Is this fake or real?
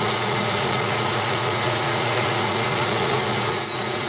fake